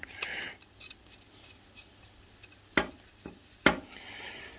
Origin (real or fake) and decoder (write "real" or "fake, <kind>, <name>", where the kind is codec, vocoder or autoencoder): real